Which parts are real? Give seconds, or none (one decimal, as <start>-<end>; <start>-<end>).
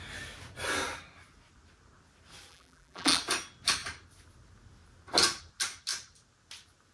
0.0-2.5; 3.2-6.9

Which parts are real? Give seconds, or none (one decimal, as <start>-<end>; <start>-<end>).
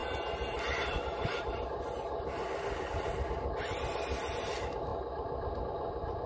0.0-6.3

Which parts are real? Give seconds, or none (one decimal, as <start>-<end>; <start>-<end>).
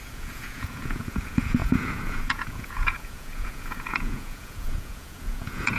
none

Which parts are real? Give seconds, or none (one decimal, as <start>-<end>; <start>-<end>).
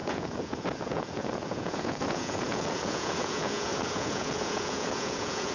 none